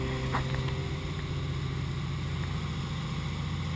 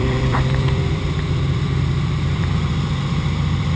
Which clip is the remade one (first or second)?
second